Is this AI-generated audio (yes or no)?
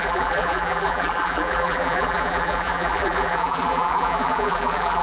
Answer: yes